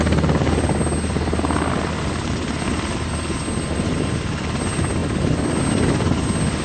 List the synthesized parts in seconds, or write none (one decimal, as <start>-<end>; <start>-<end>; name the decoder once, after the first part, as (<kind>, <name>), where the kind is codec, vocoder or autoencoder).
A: none

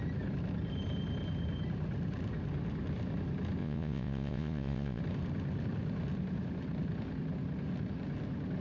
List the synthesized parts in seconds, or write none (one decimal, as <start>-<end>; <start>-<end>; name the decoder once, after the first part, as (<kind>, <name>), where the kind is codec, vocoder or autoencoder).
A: 3.6-5.0 (vocoder, Vocos)

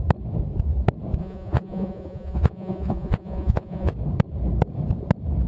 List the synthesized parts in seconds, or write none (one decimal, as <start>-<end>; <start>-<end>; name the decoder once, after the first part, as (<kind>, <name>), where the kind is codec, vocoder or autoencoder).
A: 1.2-3.9 (vocoder, Vocos)

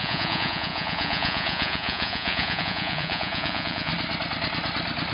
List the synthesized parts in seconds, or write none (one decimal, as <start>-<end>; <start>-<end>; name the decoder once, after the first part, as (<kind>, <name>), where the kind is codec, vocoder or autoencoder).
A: 0.0-3.9 (vocoder, Vocos)

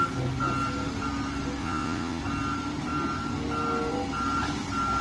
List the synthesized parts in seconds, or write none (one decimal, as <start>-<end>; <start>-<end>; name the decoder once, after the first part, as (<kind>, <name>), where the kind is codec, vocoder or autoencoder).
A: 1.6-2.2 (vocoder, Vocos)

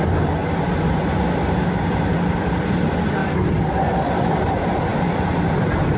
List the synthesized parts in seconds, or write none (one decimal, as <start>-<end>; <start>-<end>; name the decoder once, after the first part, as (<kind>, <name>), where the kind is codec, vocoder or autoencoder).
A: none

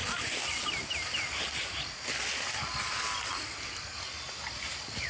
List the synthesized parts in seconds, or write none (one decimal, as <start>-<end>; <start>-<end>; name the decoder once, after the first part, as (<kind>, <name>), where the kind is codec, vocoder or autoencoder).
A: none